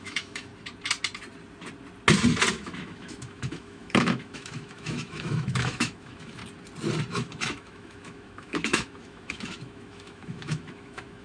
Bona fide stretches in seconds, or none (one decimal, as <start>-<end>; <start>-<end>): 0.5-2.5; 6.4-7.1